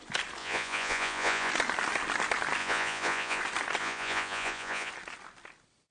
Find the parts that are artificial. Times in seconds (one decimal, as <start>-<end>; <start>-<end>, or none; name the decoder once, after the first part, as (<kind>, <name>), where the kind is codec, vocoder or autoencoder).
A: 0.4-1.5 (vocoder, Vocos); 2.6-3.4; 3.8-4.9